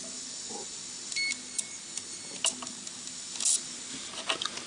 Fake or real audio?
real